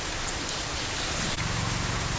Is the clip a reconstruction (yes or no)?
no